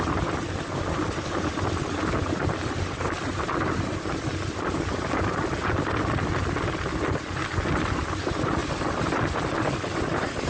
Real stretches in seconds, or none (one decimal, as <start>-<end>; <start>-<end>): 0.0-10.5